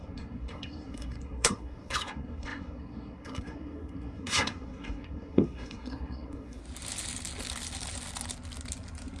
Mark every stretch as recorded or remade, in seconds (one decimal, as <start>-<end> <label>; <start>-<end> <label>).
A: 0.0-6.6 remade; 6.6-9.2 recorded